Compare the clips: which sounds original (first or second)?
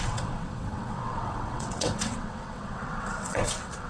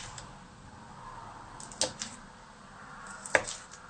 second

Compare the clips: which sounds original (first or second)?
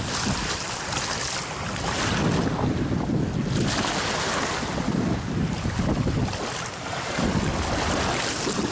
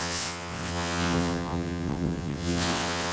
first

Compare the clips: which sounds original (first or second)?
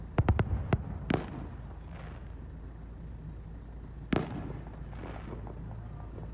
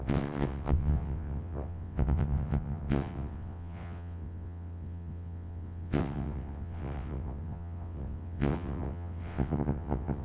first